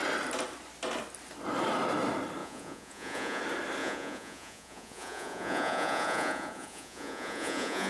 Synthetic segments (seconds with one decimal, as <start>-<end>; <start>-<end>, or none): 2.4-3.4; 3.8-7.9